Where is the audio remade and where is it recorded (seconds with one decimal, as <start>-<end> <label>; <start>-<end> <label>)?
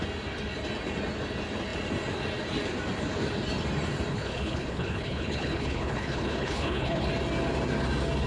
0.0-4.1 recorded; 4.1-7.1 remade; 7.1-8.3 recorded